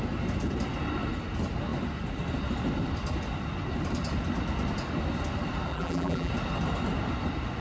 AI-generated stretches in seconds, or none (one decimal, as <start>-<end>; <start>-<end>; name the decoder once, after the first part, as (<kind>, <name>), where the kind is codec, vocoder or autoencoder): 5.7-6.3 (vocoder, BigVGAN v2)